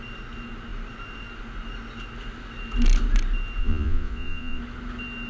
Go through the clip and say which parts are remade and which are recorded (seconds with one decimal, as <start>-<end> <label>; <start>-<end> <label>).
0.0-3.6 recorded; 3.6-4.6 remade; 4.6-5.3 recorded